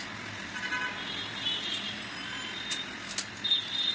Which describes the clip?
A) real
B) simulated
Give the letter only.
A